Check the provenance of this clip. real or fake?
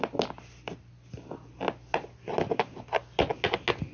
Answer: real